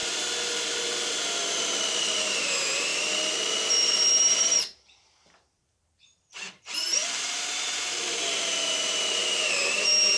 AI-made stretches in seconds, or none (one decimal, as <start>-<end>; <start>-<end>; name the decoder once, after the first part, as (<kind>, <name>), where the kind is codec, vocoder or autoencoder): 1.9-2.9 (vocoder, BigVGAN v2); 4.6-10.2